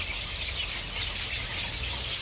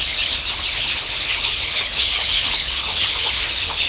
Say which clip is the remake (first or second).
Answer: second